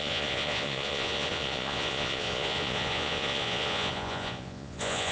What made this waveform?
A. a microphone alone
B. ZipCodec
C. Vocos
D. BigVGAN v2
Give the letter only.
C